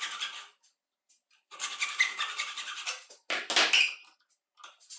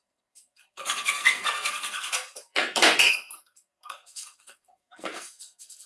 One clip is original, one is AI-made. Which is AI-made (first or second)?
second